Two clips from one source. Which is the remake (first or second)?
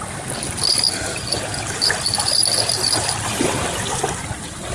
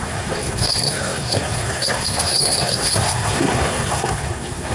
second